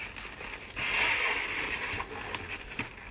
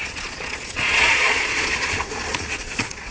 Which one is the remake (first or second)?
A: second